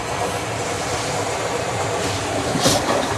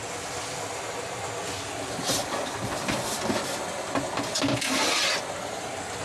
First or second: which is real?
second